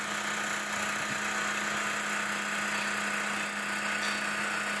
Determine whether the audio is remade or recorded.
recorded